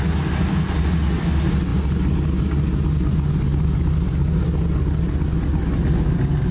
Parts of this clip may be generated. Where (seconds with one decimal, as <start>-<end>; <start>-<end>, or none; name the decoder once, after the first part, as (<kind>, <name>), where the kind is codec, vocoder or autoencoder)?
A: none